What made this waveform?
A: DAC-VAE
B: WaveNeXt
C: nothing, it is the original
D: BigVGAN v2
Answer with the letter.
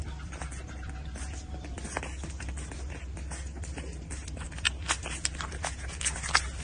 C